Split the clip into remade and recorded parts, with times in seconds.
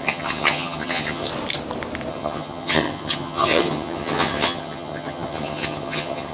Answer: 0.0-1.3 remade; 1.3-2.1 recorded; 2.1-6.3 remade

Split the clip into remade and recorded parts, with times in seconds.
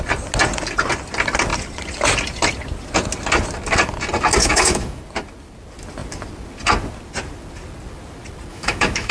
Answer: 0.0-4.4 recorded; 4.4-5.0 remade; 5.0-8.5 recorded; 8.5-9.1 remade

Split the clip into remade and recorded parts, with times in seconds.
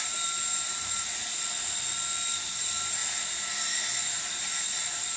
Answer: 0.0-1.2 remade; 1.2-2.3 recorded; 2.3-3.0 remade; 3.0-4.0 recorded; 4.0-5.2 remade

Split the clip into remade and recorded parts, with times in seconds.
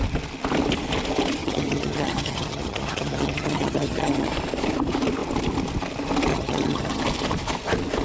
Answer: 0.0-1.4 recorded; 1.4-4.3 remade; 4.3-6.3 recorded; 6.3-7.0 remade; 7.0-8.0 recorded